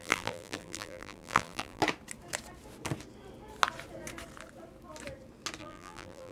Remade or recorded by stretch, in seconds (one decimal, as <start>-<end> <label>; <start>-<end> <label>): 0.0-1.8 remade; 1.8-5.6 recorded; 5.6-6.3 remade